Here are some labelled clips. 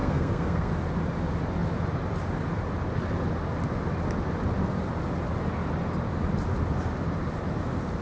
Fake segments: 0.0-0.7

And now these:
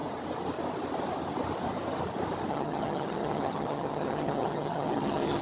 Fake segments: 2.5-5.4

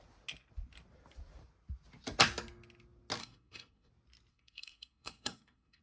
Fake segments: 3.2-3.9; 4.3-5.8

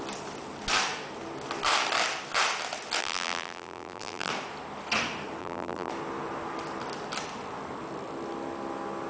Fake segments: 3.0-4.3; 5.4-5.9

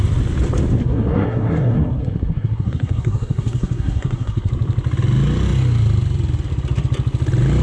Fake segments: 0.8-4.5

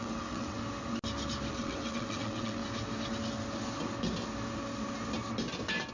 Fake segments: 0.0-0.6; 1.5-2.6

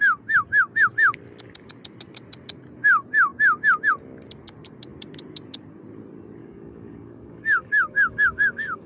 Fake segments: 6.4-8.9

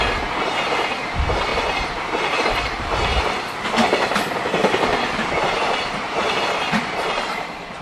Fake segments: 1.5-2.9; 4.6-7.8